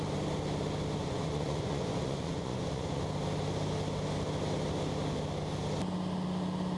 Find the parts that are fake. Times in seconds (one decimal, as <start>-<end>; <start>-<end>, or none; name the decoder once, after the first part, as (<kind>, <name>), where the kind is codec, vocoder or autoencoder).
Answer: 1.0-3.0 (vocoder, Vocos)